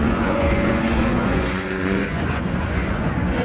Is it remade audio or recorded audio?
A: remade